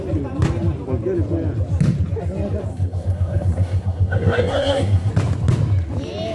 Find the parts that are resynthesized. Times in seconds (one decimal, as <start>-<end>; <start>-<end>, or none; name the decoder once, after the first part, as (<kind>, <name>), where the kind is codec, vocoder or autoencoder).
2.7-5.1 (codec, SNAC)